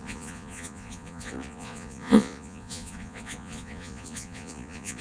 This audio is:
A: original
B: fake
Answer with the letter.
B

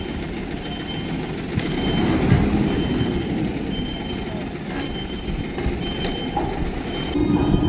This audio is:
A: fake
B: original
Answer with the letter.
B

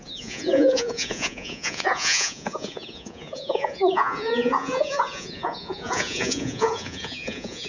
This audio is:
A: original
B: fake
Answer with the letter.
B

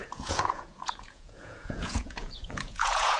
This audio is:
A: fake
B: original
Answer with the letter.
A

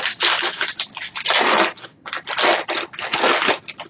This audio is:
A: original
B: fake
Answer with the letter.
A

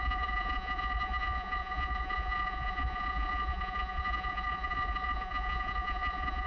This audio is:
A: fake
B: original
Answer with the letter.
A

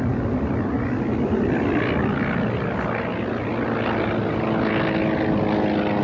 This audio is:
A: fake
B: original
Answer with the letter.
B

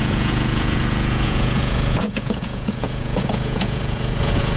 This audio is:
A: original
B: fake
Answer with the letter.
B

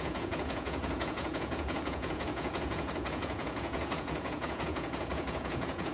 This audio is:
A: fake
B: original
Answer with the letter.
A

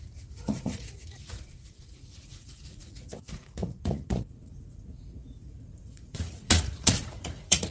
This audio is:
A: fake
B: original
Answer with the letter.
A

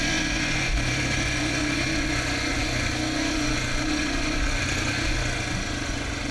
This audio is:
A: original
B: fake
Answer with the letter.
B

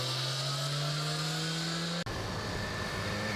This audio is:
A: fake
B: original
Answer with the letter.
B